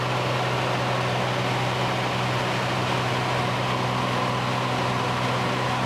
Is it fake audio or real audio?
real